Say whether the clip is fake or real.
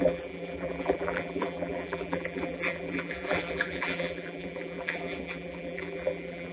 fake